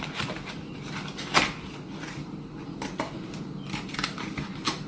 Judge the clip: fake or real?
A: real